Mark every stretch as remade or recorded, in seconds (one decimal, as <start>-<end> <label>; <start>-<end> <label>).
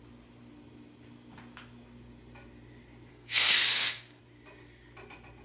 0.0-3.1 recorded; 3.1-4.2 remade; 4.2-5.4 recorded